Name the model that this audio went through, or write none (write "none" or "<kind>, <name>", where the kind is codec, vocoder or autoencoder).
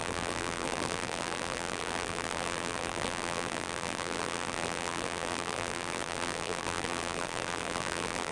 vocoder, BigVGAN v2